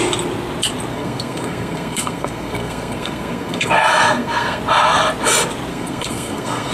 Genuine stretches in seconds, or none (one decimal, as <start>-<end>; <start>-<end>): 0.0-0.9; 4.6-5.7